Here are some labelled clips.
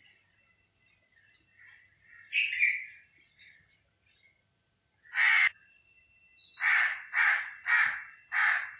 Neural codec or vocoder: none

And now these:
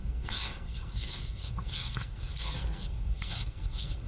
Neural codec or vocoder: codec, SNAC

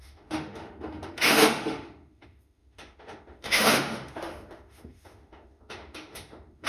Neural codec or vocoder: autoencoder, DAC-VAE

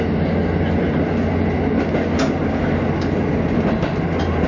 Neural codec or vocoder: none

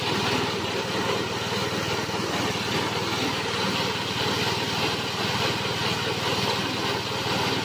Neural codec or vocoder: none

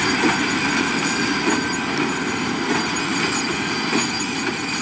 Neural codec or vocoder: none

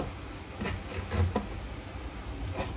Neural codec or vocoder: none